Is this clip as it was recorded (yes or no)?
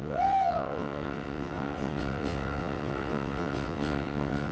no